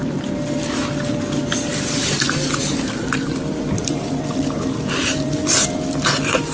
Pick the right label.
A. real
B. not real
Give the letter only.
B